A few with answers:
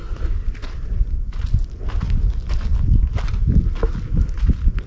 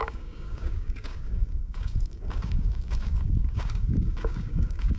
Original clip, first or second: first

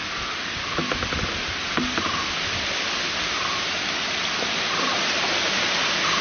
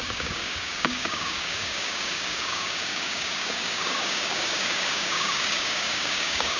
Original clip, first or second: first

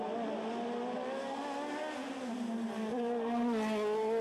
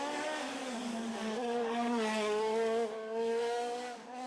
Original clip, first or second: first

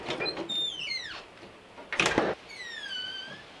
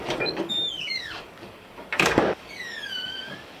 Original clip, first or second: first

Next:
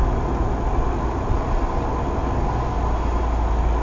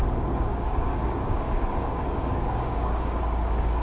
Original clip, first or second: first